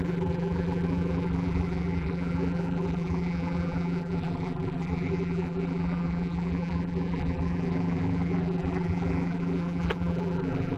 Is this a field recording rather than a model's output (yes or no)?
no